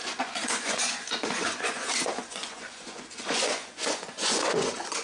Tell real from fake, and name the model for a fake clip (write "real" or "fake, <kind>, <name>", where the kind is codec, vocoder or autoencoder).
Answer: fake, vocoder, Vocos